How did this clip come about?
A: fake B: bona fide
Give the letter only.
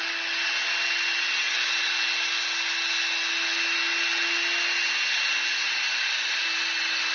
B